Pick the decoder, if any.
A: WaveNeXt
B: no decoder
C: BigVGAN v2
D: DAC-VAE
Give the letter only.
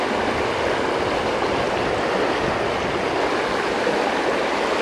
B